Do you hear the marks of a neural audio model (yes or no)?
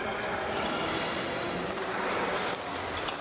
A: no